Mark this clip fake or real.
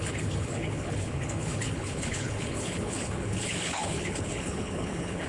fake